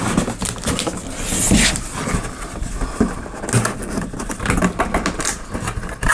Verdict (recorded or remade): recorded